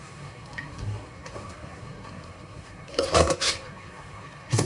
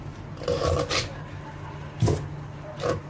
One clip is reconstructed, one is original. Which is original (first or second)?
second